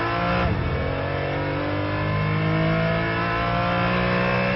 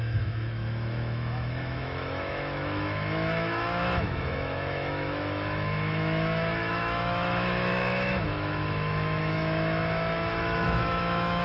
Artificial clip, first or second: second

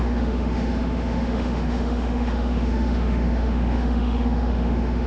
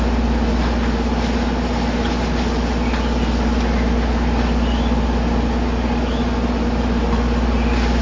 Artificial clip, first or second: first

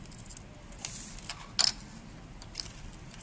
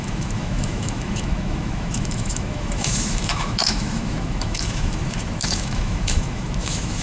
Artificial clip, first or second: second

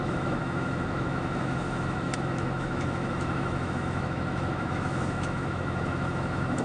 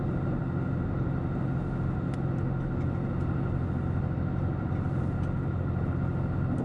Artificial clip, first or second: first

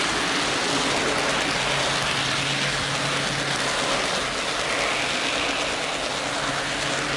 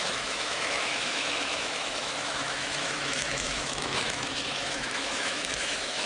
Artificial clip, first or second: second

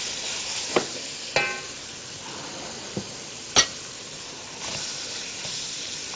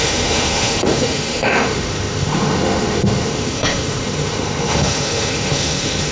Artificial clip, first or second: second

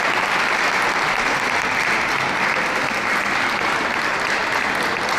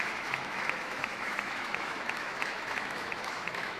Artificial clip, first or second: second